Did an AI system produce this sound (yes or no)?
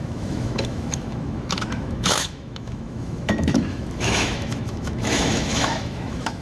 yes